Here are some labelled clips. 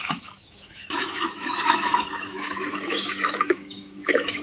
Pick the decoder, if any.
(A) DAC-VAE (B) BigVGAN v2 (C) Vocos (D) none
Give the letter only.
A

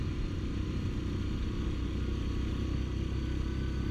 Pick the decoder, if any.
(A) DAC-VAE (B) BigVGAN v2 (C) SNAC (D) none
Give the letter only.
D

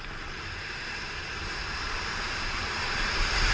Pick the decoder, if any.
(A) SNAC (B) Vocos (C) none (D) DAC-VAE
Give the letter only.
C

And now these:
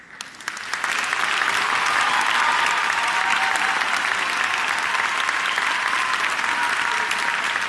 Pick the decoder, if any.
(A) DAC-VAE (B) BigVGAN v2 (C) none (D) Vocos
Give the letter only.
C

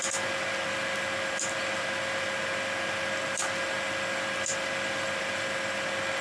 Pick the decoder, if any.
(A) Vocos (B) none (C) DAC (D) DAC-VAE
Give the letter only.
B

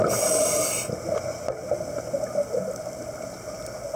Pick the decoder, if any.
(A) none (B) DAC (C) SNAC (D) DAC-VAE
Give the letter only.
A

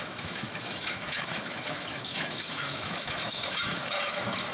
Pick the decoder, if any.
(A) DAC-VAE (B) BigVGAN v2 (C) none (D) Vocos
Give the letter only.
A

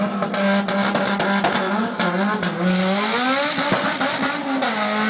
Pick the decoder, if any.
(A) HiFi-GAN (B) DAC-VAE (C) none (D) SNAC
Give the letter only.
C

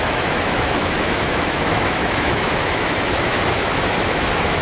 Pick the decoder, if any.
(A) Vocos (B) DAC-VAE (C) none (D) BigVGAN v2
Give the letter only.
B